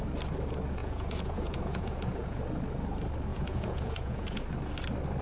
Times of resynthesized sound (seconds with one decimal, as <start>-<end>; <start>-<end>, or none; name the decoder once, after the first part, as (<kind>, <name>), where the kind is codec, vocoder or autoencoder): 0.8-2.4 (vocoder, Vocos); 3.3-4.4

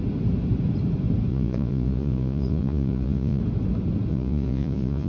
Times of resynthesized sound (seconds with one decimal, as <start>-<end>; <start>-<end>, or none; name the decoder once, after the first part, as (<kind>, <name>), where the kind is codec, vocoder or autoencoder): 1.3-3.4 (vocoder, Vocos); 4.1-5.1

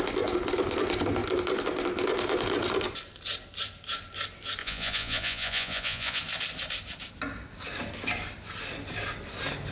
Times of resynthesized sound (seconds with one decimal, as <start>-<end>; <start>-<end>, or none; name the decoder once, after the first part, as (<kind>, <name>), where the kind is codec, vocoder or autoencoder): 4.6-6.2 (vocoder, Vocos)

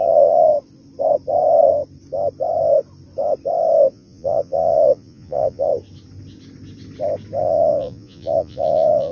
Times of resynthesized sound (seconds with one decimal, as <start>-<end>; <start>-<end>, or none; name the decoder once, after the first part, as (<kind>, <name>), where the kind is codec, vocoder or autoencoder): 0.0-0.5 (vocoder, Vocos); 3.9-5.7; 7.4-9.1

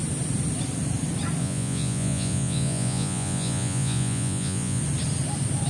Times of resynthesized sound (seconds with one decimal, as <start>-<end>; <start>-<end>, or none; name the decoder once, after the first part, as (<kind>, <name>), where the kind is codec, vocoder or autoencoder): 1.4-4.8 (vocoder, Vocos)